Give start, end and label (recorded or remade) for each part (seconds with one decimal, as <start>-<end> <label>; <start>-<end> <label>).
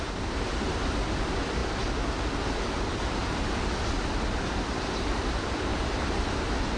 0.0-1.6 remade; 1.6-2.7 recorded; 2.7-3.2 remade; 3.2-4.5 recorded; 4.5-5.7 remade; 5.7-6.2 recorded; 6.2-6.8 remade